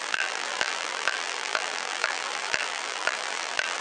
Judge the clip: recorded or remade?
remade